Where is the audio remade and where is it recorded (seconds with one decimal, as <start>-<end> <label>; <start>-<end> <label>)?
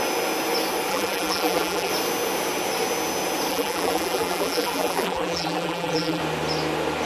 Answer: 0.0-0.9 recorded; 0.9-1.9 remade; 1.9-3.5 recorded; 3.5-6.2 remade; 6.2-7.0 recorded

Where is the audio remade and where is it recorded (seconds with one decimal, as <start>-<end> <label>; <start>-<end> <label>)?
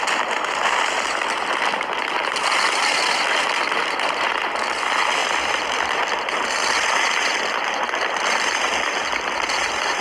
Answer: 0.0-5.2 recorded; 5.2-8.6 remade; 8.6-10.0 recorded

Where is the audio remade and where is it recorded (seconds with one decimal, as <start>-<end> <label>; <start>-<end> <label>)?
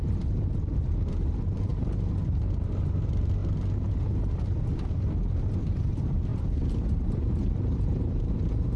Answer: 0.0-1.7 remade; 1.7-2.4 recorded; 2.4-3.4 remade; 3.4-5.5 recorded; 5.5-6.3 remade; 6.3-6.9 recorded; 6.9-8.8 remade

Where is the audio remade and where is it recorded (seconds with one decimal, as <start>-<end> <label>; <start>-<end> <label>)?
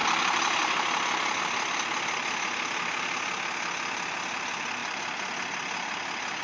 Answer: 0.0-6.4 recorded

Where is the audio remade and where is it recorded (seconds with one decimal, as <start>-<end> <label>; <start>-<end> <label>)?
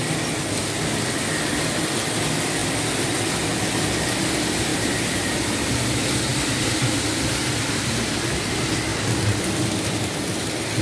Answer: 0.0-4.7 recorded; 4.7-5.7 remade; 5.7-6.3 recorded; 6.3-8.5 remade; 8.5-10.8 recorded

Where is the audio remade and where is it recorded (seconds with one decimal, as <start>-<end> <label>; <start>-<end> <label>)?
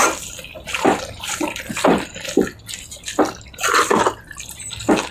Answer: 0.0-2.1 remade; 2.1-5.1 recorded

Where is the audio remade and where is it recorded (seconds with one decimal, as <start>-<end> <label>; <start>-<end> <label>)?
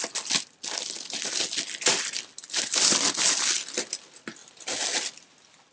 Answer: 0.0-5.7 recorded